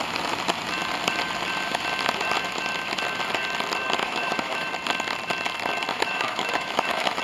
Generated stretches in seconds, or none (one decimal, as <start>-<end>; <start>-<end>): 4.0-4.7; 5.9-7.2